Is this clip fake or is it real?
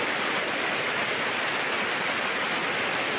real